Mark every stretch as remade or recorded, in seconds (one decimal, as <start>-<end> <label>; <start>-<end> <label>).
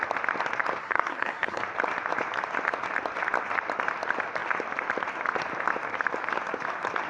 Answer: 0.0-0.8 recorded; 0.8-1.6 remade; 1.6-7.1 recorded